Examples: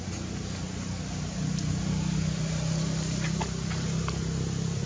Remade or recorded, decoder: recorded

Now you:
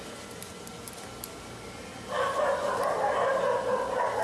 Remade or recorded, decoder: recorded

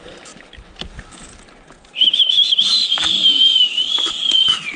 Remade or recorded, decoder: recorded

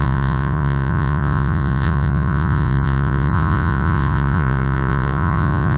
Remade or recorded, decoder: remade, vocoder, Vocos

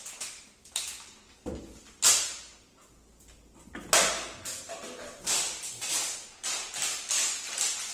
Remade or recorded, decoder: recorded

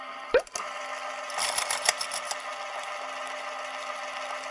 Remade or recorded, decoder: recorded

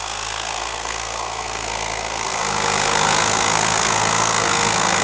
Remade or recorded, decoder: remade, codec, SNAC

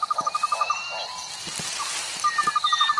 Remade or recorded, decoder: recorded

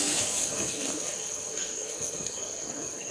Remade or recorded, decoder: remade, codec, SNAC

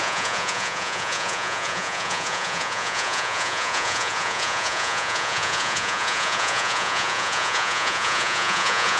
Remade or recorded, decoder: remade, vocoder, Vocos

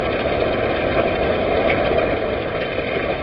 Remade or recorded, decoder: remade, vocoder, BigVGAN v2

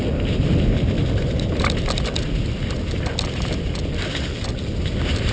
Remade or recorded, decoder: recorded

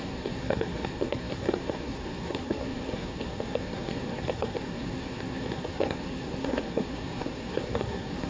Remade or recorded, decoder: remade, codec, SNAC